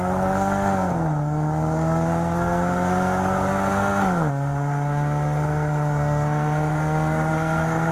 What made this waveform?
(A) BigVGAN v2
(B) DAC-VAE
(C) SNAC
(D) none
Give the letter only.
C